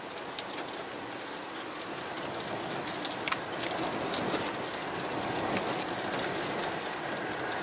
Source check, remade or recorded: recorded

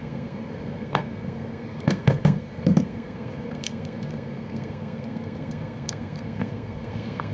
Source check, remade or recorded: remade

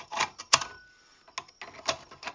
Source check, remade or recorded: recorded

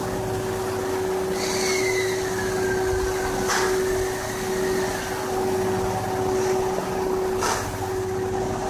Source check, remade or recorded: recorded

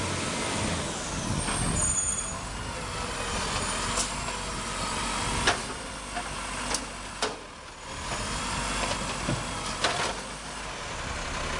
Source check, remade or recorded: recorded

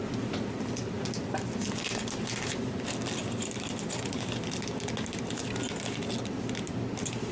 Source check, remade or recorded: recorded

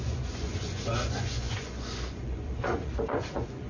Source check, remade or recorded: remade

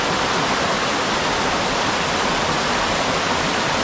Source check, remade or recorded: recorded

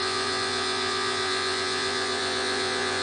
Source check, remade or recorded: remade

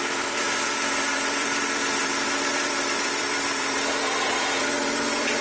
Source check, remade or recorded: remade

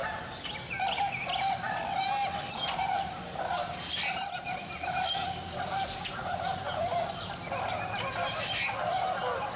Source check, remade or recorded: recorded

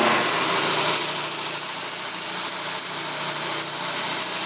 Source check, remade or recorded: recorded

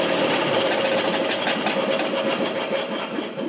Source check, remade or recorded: recorded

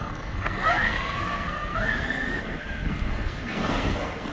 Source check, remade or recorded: remade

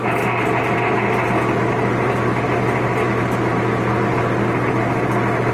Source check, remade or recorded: recorded